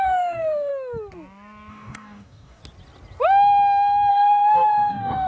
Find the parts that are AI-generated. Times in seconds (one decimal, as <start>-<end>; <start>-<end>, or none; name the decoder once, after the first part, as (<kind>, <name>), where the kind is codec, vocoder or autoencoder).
0.0-0.7 (codec, DAC); 1.7-2.6; 4.1-5.3